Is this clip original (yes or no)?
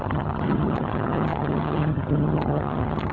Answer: no